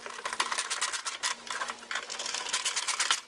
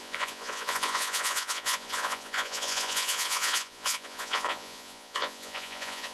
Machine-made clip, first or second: second